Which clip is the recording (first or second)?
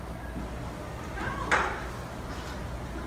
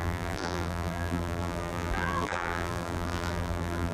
first